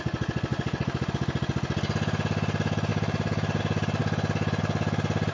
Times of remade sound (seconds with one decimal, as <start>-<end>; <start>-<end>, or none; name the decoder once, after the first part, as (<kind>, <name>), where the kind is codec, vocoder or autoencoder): 0.5-1.1 (vocoder, BigVGAN v2); 2.9-3.6